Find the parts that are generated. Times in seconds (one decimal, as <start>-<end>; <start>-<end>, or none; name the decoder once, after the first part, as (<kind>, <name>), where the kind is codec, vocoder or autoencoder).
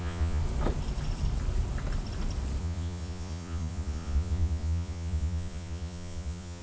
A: 0.0-0.4 (vocoder, Vocos); 2.6-6.6